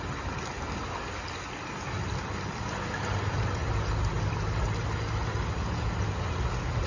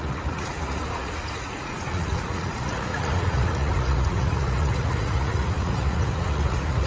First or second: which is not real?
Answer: second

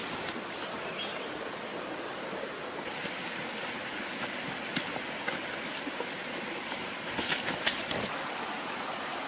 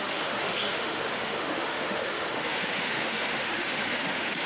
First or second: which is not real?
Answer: second